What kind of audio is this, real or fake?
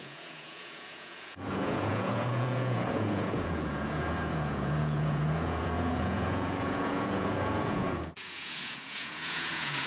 fake